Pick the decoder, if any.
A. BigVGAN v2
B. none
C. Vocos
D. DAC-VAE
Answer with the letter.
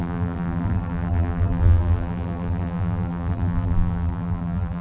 A